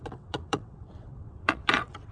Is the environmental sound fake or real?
fake